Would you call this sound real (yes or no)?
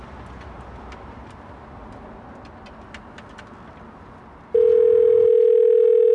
yes